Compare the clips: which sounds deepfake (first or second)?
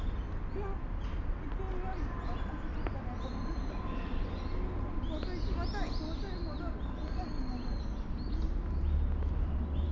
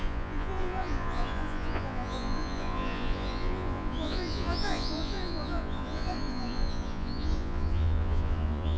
second